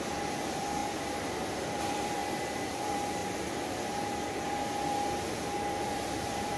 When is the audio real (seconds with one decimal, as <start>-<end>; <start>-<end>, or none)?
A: 0.8-1.4; 2.2-2.7; 3.2-5.8